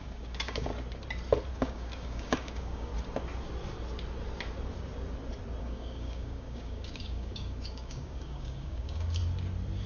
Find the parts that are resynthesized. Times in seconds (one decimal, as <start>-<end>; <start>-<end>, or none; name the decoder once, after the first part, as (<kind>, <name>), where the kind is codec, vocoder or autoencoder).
0.0-0.7 (codec, DAC); 1.5-2.9; 5.6-9.2